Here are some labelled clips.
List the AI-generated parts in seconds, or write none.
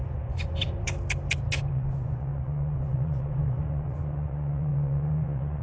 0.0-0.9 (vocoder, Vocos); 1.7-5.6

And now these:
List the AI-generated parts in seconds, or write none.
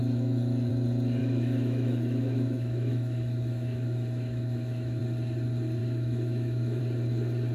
0.0-0.7 (autoencoder, DAC-VAE); 1.2-5.0; 5.8-6.8